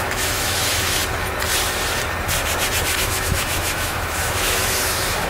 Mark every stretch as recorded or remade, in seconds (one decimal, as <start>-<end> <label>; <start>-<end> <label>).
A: 0.0-1.0 remade; 1.0-3.0 recorded; 3.0-5.3 remade